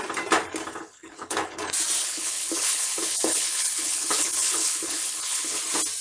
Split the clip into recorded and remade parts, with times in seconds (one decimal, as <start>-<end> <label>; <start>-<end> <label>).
0.0-0.7 recorded; 0.7-1.6 remade; 1.6-2.0 recorded; 2.0-5.6 remade; 5.6-6.0 recorded